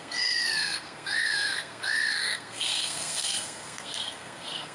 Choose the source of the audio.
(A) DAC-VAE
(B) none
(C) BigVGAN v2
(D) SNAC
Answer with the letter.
D